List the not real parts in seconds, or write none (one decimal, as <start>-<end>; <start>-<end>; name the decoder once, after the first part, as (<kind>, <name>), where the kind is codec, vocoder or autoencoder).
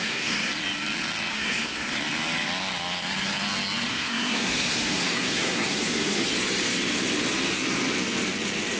0.0-0.5 (codec, SNAC); 1.3-1.9; 3.9-6.3